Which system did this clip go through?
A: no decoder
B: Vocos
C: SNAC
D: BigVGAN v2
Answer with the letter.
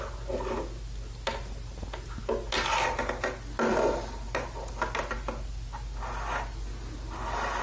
A